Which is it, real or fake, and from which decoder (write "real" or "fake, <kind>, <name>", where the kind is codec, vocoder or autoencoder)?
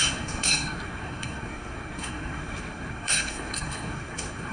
fake, codec, SNAC